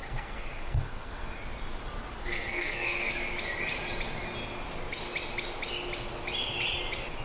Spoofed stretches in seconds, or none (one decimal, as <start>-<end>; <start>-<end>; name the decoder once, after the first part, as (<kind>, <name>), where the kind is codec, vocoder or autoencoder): 0.0-1.4 (codec, SNAC); 2.2-3.1